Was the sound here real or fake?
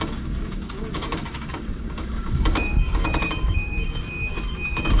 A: fake